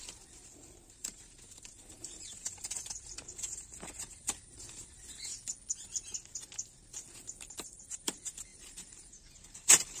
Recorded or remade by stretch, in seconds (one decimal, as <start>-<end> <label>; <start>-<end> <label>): 0.0-0.8 recorded; 0.8-5.3 remade; 5.3-7.5 recorded; 7.5-10.0 remade